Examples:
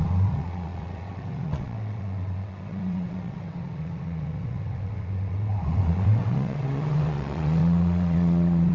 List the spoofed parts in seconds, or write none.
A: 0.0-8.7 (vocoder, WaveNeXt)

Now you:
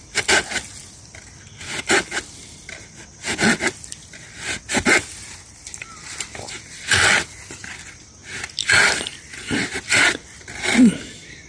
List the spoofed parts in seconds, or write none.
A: none